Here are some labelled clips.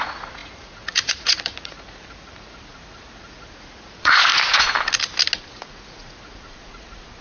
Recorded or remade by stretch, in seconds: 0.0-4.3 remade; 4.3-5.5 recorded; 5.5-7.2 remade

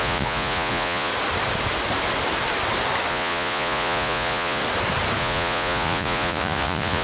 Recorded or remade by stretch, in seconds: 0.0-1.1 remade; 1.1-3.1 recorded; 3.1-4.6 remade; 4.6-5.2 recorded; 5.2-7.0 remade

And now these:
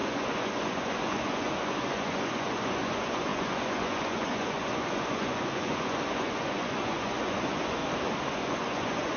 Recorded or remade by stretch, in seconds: 0.0-7.8 remade; 7.8-8.3 recorded; 8.3-9.2 remade

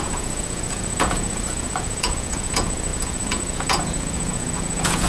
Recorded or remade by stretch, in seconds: 0.0-5.1 remade

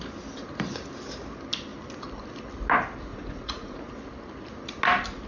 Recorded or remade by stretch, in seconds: 0.0-3.1 recorded; 3.1-3.8 remade; 3.8-5.3 recorded

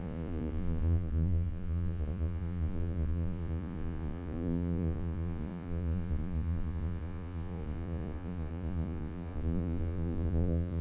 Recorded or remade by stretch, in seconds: 0.0-10.8 remade